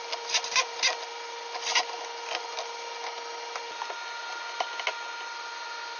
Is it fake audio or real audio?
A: real